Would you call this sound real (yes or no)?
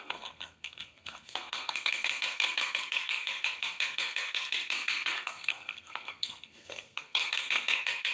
no